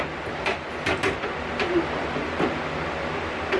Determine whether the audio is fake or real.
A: real